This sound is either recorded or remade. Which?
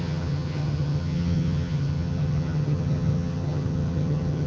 remade